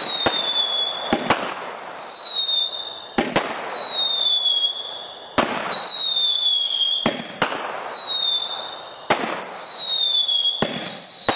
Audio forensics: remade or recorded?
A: recorded